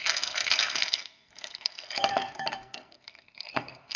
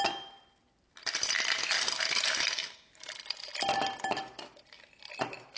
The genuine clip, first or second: second